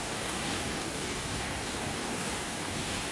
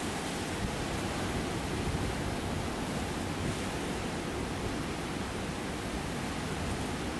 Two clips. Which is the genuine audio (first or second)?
second